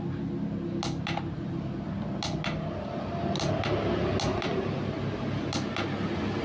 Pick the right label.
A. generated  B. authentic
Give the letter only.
B